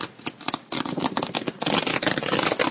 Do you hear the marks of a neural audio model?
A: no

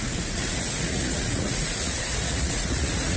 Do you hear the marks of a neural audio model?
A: yes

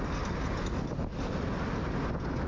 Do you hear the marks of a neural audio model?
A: no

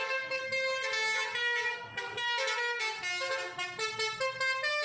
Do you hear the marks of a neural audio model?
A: no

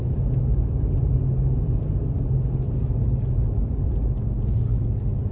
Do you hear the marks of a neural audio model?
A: no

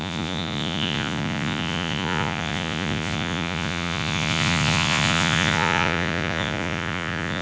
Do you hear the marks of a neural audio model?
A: yes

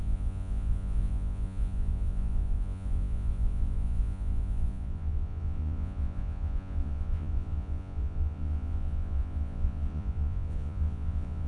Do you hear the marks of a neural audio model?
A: yes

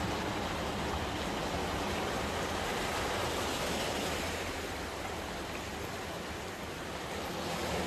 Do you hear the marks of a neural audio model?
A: no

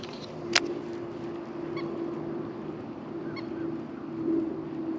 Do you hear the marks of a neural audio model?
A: no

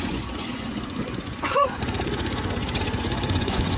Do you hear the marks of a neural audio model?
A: yes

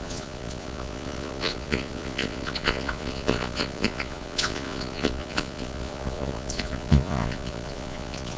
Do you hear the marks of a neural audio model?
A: yes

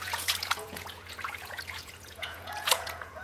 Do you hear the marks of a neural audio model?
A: yes